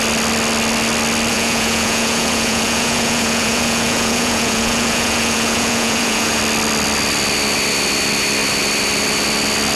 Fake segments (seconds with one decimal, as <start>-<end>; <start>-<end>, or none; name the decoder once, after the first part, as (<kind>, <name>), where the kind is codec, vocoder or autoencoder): 1.3-6.4 (vocoder, Vocos)